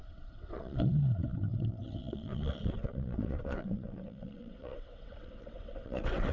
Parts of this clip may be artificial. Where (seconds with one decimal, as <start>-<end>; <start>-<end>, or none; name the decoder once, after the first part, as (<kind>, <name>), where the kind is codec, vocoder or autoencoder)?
0.0-6.3 (vocoder, WaveNeXt)